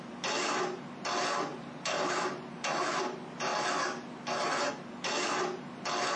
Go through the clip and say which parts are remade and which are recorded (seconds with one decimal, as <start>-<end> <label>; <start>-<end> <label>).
0.0-1.5 recorded; 1.5-3.0 remade; 3.0-6.2 recorded

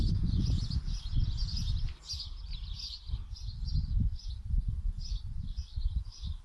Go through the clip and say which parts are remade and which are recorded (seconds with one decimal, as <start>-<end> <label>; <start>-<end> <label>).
0.0-1.1 remade; 1.1-4.5 recorded; 4.5-6.4 remade

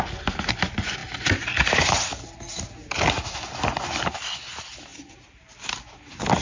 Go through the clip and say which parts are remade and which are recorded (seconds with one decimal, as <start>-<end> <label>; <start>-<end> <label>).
0.0-6.4 recorded

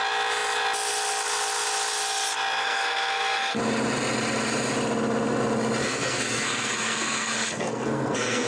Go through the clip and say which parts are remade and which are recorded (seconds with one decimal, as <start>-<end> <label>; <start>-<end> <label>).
0.0-2.6 recorded; 2.6-3.6 remade; 3.6-5.8 recorded; 5.8-8.5 remade

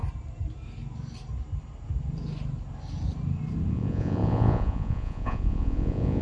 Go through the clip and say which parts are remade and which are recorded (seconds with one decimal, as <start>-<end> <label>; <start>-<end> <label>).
0.0-3.7 recorded; 3.7-6.2 remade